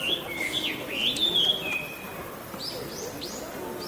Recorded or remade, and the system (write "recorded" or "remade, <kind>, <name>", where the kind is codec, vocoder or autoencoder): recorded